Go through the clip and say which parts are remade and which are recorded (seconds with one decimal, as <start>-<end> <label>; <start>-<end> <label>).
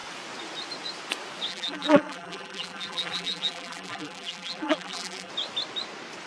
0.0-1.5 recorded; 1.5-5.3 remade; 5.3-6.3 recorded